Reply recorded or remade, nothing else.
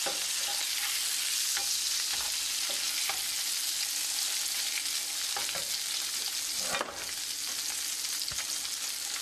recorded